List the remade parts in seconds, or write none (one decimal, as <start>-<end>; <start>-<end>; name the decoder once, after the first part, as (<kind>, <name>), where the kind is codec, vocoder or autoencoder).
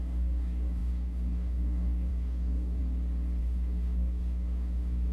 0.0-2.8 (codec, DAC); 3.4-5.1